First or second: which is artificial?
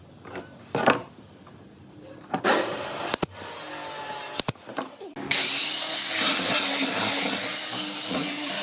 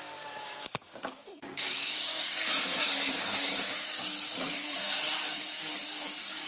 second